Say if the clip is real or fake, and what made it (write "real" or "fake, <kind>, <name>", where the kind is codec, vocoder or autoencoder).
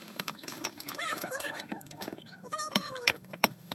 fake, autoencoder, DAC-VAE